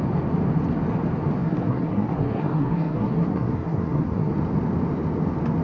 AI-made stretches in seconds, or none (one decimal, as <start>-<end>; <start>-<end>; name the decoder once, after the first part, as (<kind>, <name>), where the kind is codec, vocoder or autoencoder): 1.4-4.3 (codec, SNAC)